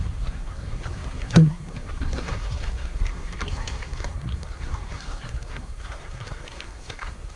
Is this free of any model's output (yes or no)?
no